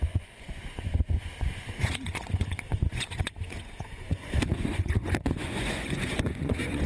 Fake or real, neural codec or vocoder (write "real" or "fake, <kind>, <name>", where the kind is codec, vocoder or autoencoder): fake, vocoder, Vocos